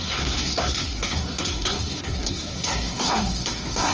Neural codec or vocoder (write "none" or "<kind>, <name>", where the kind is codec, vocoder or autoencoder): codec, SNAC